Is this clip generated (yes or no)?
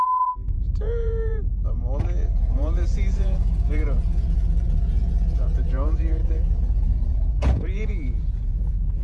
yes